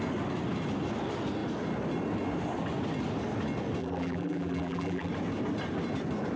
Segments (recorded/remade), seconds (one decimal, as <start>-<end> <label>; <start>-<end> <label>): 0.0-3.8 recorded; 3.8-5.1 remade; 5.1-6.4 recorded